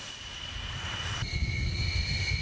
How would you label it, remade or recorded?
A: recorded